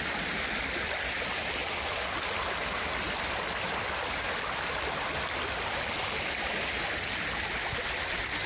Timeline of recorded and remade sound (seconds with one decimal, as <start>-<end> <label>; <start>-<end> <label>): 0.0-8.5 recorded